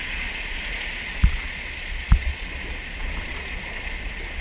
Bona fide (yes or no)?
no